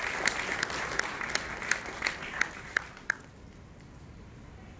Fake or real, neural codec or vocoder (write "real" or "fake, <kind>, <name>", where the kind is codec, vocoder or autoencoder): real